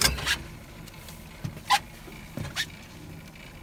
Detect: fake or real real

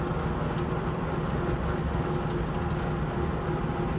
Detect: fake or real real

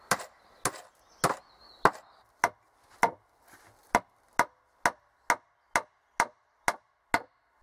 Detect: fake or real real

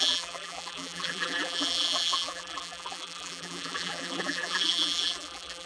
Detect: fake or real fake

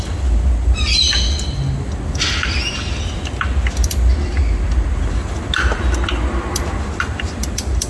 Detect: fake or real real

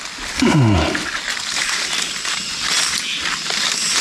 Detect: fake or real real